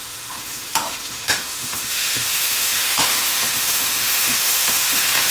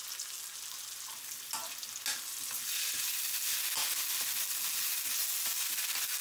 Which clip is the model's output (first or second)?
first